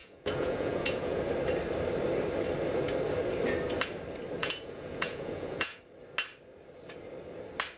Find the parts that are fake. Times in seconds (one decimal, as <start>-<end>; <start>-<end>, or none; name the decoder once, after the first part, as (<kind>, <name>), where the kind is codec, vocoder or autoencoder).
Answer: 0.0-1.2 (vocoder, Vocos); 4.4-5.8